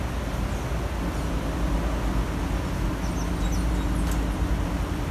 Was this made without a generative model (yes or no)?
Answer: yes